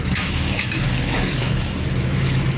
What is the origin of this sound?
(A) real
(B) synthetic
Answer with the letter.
B